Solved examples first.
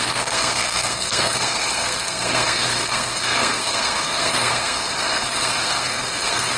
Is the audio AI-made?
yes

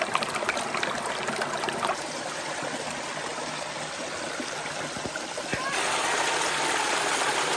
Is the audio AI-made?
no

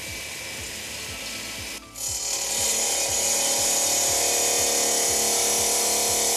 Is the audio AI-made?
no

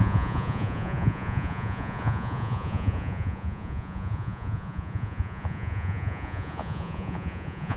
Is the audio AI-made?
yes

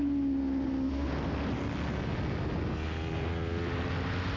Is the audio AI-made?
no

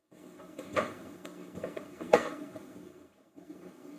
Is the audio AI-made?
yes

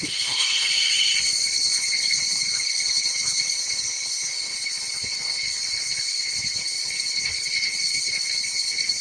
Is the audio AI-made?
yes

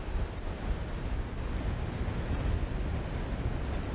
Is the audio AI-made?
no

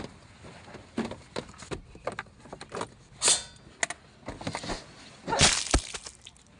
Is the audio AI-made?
no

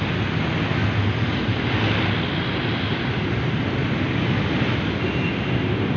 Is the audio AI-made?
no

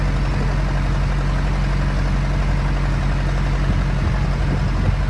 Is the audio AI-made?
no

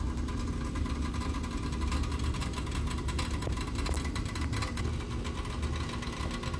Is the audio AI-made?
no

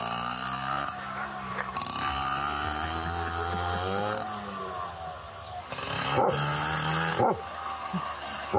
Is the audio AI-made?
no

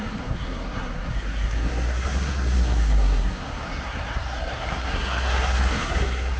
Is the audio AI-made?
yes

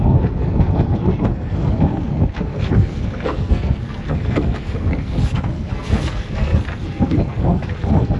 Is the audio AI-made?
yes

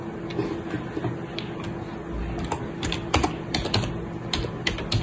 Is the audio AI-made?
no